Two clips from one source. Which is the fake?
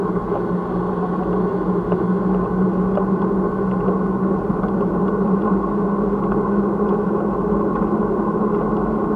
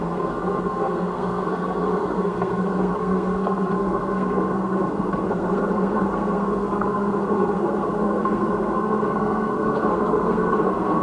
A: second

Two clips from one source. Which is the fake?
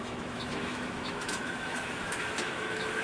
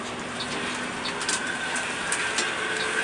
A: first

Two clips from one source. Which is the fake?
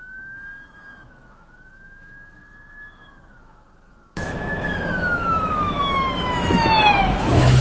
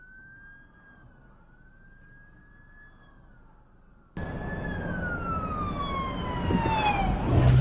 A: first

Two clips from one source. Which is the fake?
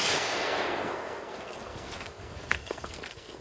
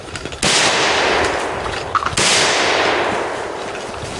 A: first